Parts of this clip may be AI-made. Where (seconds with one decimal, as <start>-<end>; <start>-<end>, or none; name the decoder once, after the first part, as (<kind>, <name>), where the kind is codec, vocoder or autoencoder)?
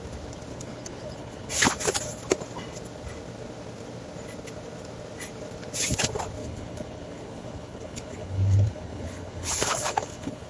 0.5-1.5 (codec, HILCodec); 6.4-10.5